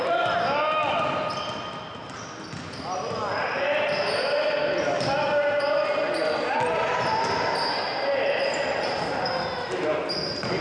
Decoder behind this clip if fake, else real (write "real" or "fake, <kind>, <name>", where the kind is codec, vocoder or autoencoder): real